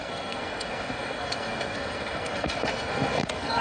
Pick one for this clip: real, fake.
fake